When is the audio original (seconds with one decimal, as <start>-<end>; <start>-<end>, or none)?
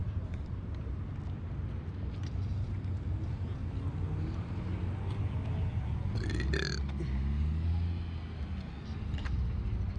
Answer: 0.0-10.0